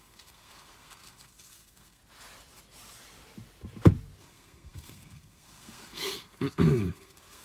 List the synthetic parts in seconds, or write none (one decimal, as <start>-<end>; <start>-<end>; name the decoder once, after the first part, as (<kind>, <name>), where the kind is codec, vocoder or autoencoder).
0.0-2.0 (codec, SNAC); 4.2-7.4